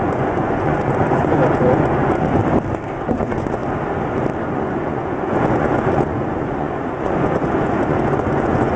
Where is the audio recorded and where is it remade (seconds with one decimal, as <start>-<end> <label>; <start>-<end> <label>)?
0.0-2.4 remade; 2.4-3.1 recorded; 3.1-3.6 remade; 3.6-4.5 recorded; 4.5-8.8 remade